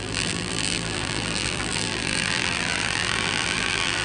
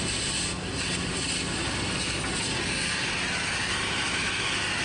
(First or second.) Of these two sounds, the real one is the second